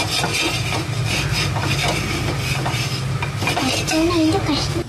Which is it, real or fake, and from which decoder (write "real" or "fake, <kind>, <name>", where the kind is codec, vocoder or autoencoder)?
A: real